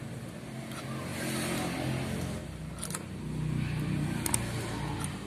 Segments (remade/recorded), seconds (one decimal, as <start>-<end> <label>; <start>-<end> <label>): 0.0-5.3 recorded